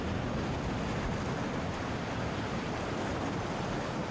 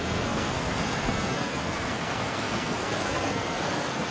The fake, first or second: second